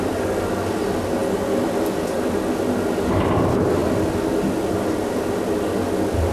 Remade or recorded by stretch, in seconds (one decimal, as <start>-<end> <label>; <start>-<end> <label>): 0.0-6.3 recorded